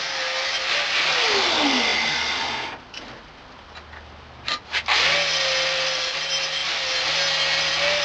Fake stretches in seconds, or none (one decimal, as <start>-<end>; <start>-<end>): none

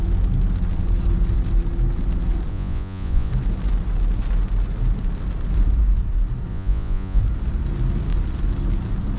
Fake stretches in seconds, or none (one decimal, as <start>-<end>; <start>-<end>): 2.5-3.3; 6.5-7.2

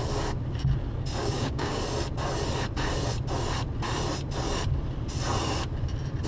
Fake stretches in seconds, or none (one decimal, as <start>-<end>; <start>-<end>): 1.2-1.8

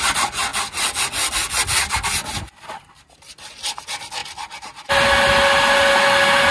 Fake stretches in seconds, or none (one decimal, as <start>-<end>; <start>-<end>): none